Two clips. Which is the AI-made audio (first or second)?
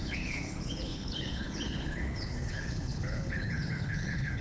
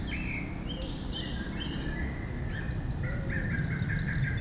first